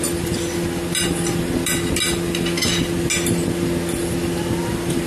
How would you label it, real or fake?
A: real